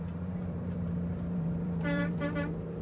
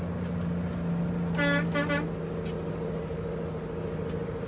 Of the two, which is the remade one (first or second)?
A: first